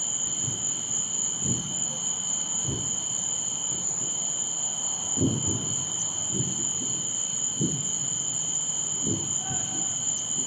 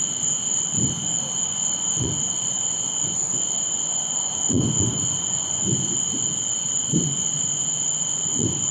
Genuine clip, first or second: first